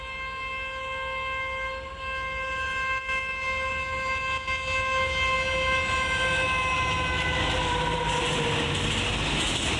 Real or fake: real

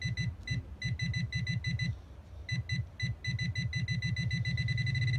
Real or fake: real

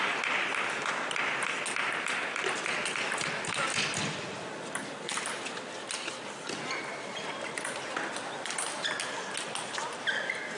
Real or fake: real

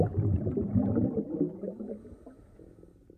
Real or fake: real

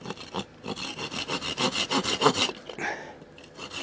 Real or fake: real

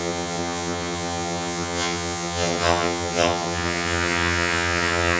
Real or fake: fake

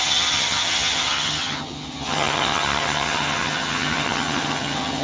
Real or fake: fake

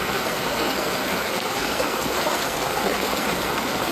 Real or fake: fake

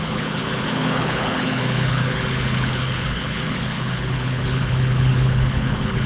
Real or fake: fake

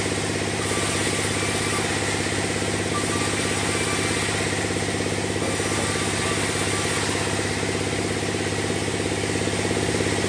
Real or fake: real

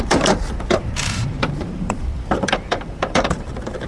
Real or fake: fake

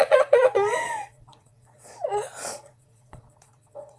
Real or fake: fake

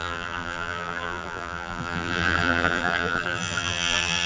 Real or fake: fake